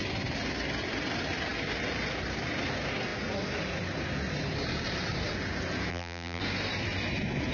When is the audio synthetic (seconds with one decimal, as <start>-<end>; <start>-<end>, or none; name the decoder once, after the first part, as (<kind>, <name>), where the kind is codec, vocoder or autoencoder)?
5.9-6.4 (vocoder, BigVGAN v2)